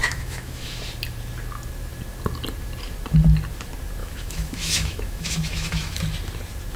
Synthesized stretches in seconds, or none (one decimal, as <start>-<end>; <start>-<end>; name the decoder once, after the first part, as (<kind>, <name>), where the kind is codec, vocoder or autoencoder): 0.0-0.8 (autoencoder, DAC-VAE); 4.0-6.0